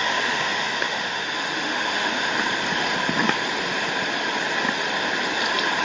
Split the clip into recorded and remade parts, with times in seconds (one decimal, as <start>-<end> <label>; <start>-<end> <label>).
0.0-2.3 remade; 2.3-5.8 recorded